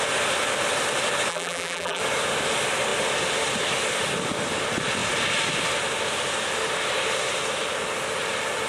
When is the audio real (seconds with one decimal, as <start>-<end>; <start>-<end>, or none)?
0.0-1.3; 2.0-8.7